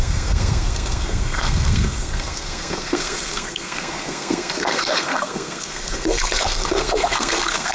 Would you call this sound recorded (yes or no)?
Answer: no